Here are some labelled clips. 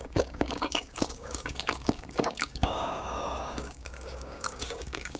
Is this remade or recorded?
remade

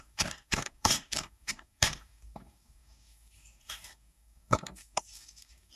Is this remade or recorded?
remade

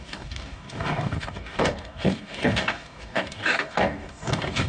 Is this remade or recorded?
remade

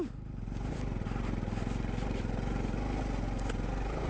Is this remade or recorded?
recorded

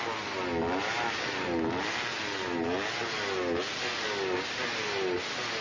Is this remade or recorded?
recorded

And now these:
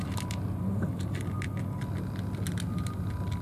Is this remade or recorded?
recorded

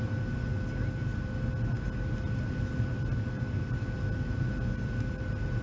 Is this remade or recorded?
recorded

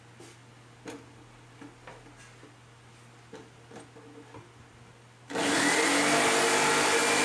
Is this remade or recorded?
recorded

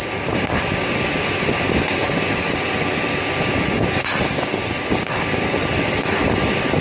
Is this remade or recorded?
recorded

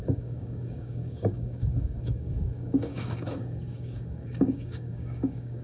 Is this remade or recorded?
remade